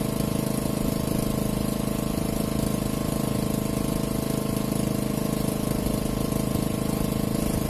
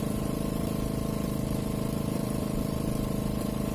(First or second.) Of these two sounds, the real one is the first